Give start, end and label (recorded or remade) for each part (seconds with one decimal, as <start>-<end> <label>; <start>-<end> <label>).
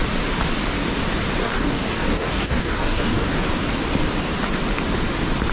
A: 0.0-1.4 recorded; 1.4-3.4 remade; 3.4-5.5 recorded